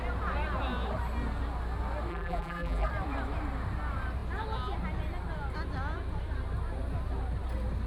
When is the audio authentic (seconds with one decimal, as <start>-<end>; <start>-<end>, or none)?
0.0-2.1; 2.9-7.9